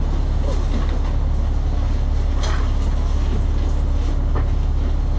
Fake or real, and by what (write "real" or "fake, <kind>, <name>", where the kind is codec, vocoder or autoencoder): real